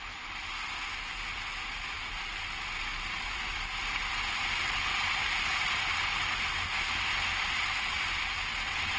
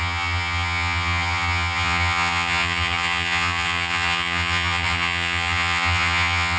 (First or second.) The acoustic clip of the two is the first